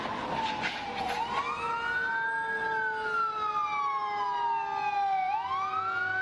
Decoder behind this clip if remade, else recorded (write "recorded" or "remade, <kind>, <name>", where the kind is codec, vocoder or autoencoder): recorded